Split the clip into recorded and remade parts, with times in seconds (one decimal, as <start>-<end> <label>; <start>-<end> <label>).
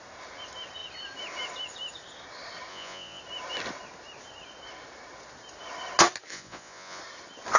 0.0-2.7 recorded; 2.7-3.2 remade; 3.2-6.3 recorded; 6.3-7.0 remade; 7.0-7.6 recorded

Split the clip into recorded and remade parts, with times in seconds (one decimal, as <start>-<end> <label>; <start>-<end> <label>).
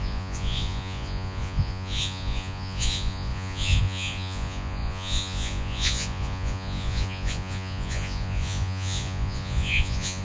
0.0-10.2 remade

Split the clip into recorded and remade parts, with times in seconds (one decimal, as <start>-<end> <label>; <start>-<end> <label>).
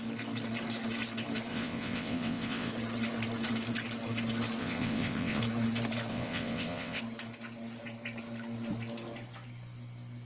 0.0-1.5 recorded; 1.5-2.7 remade; 2.7-4.6 recorded; 4.6-5.4 remade; 5.4-6.1 recorded; 6.1-7.0 remade; 7.0-10.2 recorded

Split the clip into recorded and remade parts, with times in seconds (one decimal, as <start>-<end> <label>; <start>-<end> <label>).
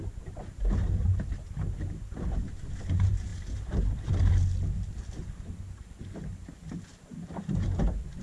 0.0-8.2 recorded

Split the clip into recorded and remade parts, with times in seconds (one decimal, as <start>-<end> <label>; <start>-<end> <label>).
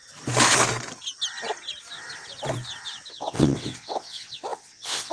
0.0-3.1 recorded; 3.1-5.1 remade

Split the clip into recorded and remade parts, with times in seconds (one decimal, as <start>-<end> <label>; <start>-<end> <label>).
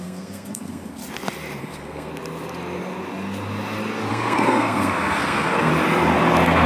0.0-1.0 remade; 1.0-1.6 recorded; 1.6-2.1 remade; 2.1-4.1 recorded; 4.1-5.7 remade; 5.7-6.7 recorded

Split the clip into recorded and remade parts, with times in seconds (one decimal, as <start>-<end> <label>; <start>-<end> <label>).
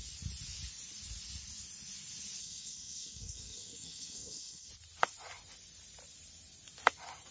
0.0-2.4 recorded; 2.4-4.7 remade; 4.7-7.3 recorded